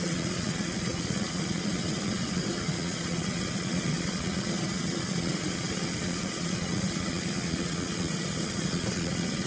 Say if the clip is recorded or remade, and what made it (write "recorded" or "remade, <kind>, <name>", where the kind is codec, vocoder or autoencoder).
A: remade, vocoder, Vocos